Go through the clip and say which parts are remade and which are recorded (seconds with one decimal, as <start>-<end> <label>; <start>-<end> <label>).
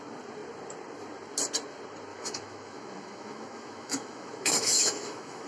0.0-2.1 recorded; 2.1-5.5 remade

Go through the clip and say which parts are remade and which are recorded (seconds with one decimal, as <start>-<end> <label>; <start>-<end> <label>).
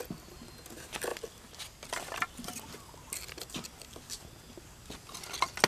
0.0-5.7 recorded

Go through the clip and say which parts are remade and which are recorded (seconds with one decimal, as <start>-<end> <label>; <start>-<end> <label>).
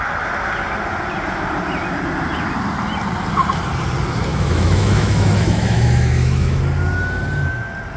0.0-4.3 recorded; 4.3-6.6 remade; 6.6-8.0 recorded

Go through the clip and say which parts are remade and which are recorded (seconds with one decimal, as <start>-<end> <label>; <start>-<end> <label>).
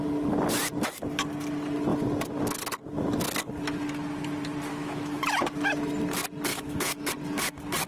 0.0-4.7 recorded; 4.7-5.2 remade; 5.2-6.5 recorded; 6.5-7.1 remade; 7.1-7.9 recorded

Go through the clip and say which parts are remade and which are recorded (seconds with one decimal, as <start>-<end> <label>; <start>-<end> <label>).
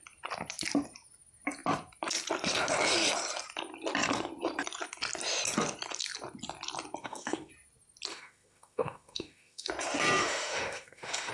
0.0-7.0 recorded; 7.0-7.5 remade; 7.5-8.1 recorded; 8.1-9.7 remade; 9.7-10.2 recorded; 10.2-11.3 remade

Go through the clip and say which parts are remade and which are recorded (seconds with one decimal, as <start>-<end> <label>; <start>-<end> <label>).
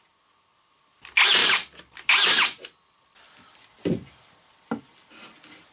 0.0-5.7 recorded